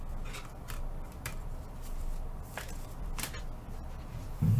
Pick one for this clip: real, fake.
fake